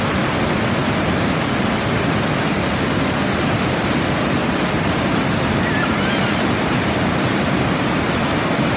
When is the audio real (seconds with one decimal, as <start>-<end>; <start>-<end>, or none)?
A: 0.8-3.2